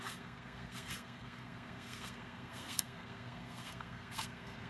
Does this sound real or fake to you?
fake